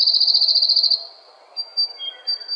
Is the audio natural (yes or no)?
yes